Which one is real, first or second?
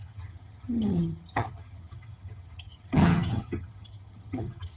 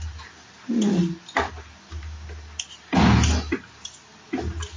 second